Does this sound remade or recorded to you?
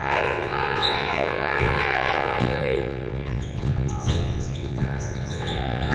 remade